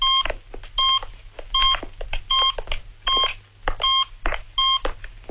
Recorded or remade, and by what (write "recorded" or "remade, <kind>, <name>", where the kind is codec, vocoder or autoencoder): recorded